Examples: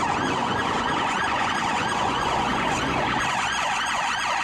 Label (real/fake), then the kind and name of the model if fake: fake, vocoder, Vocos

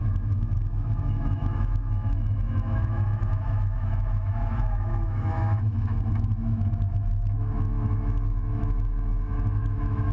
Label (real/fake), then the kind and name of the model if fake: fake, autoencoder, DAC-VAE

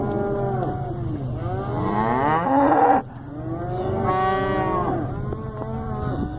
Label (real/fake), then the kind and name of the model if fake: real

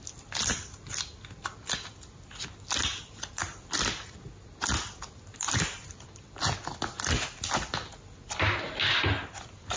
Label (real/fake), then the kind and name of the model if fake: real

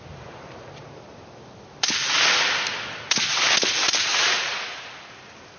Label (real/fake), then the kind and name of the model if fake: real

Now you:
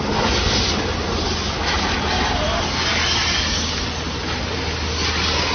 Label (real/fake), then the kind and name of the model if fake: real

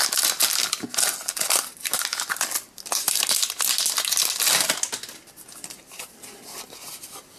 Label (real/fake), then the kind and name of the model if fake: real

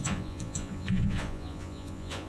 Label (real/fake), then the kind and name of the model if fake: fake, vocoder, Vocos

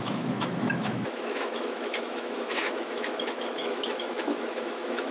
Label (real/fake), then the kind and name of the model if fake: fake, autoencoder, DAC-VAE